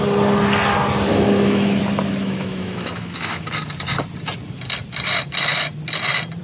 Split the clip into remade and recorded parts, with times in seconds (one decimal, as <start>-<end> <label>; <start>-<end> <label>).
0.0-1.1 recorded; 1.1-1.8 remade; 1.8-2.2 recorded; 2.2-3.5 remade; 3.5-6.4 recorded